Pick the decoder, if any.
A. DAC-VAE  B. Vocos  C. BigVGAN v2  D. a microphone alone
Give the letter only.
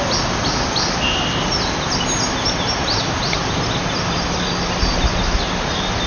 D